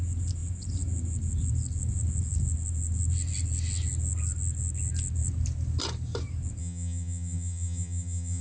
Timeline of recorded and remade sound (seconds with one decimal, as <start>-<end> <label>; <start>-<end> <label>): 0.0-6.6 recorded; 6.6-8.4 remade